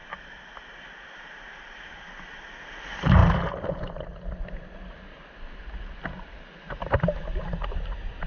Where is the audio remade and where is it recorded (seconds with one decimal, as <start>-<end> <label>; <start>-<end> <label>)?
0.0-8.3 recorded